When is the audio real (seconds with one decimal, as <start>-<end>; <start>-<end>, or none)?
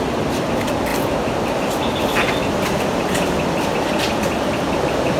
0.0-5.2